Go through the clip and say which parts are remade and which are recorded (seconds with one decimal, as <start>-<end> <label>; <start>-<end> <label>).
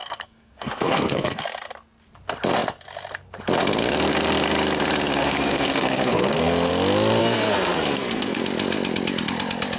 0.0-1.4 remade; 1.4-5.2 recorded; 5.2-6.7 remade; 6.7-7.2 recorded; 7.2-8.4 remade; 8.4-9.8 recorded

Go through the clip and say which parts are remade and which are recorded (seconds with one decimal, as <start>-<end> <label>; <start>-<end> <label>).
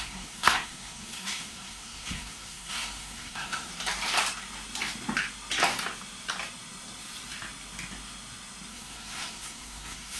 0.0-3.7 remade; 3.7-8.7 recorded; 8.7-10.2 remade